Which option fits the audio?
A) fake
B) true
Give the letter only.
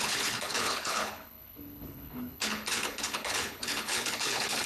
A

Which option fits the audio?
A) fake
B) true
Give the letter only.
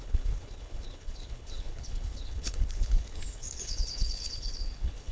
A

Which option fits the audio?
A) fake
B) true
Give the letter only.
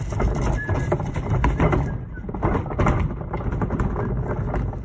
B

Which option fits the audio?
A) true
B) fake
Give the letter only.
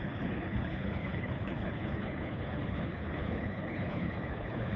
B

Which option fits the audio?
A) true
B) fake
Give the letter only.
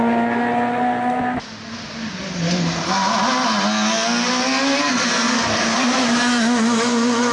A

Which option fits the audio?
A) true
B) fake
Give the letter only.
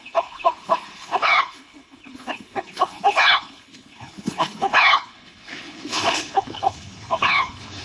B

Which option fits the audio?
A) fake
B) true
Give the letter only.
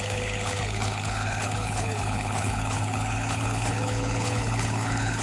A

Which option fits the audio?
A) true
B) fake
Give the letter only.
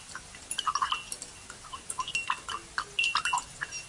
A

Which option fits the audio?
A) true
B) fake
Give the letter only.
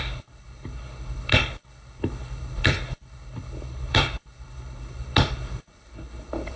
B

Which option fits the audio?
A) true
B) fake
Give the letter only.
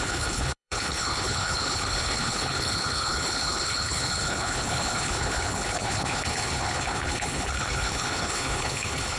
B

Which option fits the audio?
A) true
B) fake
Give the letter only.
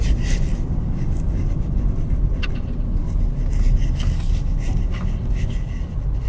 A